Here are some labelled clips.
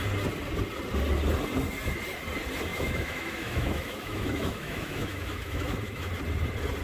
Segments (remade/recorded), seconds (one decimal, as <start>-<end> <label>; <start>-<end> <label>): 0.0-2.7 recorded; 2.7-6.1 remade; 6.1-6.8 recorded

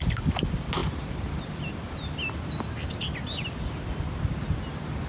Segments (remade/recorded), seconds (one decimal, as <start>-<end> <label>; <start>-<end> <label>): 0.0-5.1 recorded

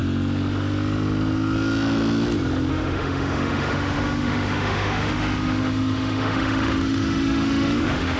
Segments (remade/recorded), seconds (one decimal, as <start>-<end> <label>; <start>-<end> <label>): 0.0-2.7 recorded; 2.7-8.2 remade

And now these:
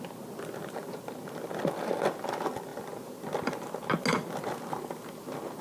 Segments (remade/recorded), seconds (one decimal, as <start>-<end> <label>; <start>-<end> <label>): 0.0-5.6 recorded

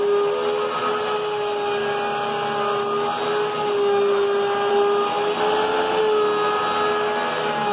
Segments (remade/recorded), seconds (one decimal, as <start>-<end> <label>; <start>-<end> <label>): 0.0-7.7 recorded

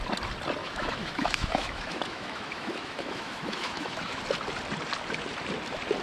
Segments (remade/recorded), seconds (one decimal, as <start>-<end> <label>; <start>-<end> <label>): 0.0-0.6 recorded; 0.6-4.2 remade; 4.2-6.0 recorded

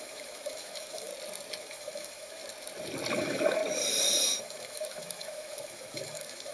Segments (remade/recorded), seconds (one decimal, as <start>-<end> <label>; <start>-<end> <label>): 0.0-1.1 remade; 1.1-1.6 recorded; 1.6-2.4 remade; 2.4-3.1 recorded; 3.1-3.6 remade; 3.6-4.4 recorded; 4.4-6.5 remade

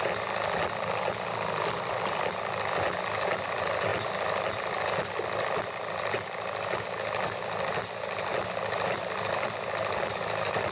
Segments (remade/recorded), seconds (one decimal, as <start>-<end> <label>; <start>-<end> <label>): 0.0-10.7 recorded